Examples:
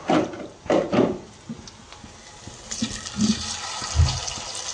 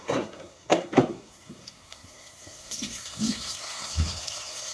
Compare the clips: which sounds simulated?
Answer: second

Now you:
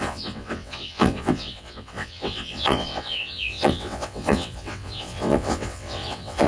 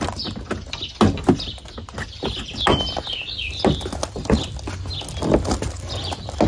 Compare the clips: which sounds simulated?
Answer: first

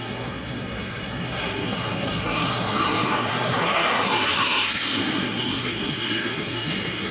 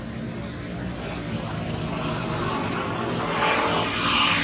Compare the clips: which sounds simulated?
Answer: first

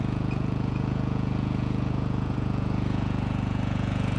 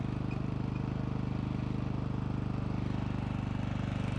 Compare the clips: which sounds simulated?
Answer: first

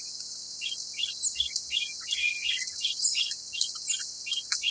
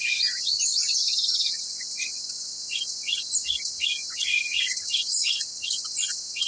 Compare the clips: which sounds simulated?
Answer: second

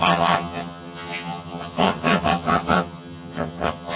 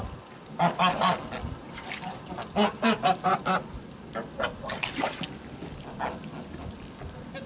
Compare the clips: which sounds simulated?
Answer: first